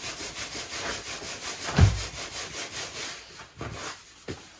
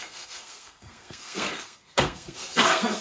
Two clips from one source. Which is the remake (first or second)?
second